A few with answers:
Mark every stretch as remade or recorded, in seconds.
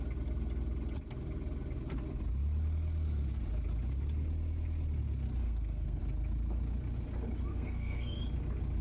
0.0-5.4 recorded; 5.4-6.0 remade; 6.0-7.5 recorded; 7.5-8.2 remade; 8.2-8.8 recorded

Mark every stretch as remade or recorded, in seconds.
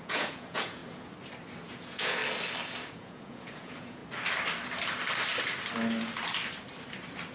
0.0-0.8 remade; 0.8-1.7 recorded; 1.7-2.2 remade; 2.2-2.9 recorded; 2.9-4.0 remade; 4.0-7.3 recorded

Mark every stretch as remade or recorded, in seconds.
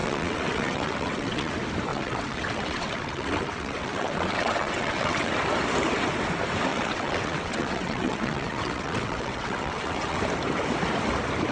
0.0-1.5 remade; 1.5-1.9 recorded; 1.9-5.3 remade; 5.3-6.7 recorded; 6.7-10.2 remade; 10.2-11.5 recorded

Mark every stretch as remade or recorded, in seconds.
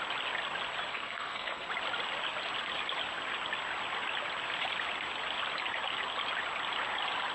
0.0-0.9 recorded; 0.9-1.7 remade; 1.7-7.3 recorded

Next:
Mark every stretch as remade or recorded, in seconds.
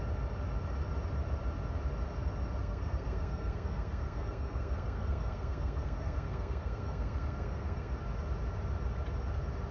0.0-2.6 recorded; 2.6-7.9 remade; 7.9-9.7 recorded